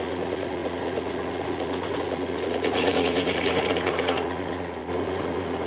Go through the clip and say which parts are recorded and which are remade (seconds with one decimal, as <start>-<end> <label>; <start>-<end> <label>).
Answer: 0.0-5.7 remade